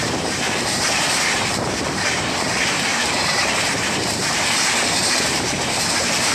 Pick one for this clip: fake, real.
fake